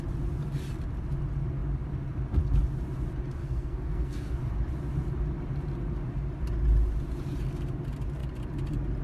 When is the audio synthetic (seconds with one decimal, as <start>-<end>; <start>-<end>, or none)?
3.4-4.5